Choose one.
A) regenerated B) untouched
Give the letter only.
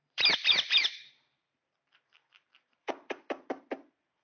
A